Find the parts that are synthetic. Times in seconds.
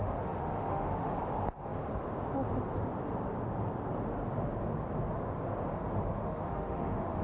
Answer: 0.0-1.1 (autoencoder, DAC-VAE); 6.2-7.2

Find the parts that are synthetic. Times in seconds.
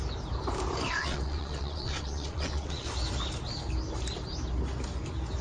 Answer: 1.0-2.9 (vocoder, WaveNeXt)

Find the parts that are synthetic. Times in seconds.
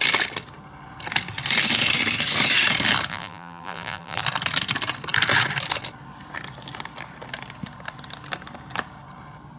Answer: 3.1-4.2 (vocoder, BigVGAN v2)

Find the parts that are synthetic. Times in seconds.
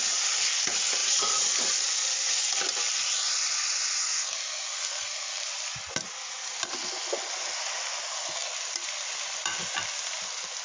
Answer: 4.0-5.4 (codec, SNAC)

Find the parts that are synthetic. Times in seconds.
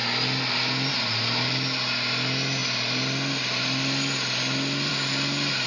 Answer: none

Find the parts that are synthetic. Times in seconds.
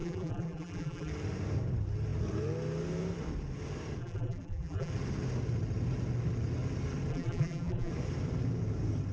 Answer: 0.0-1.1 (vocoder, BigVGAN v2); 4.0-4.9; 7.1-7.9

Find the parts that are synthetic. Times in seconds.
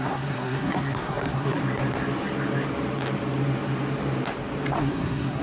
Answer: 0.0-1.6 (codec, SNAC); 4.8-5.4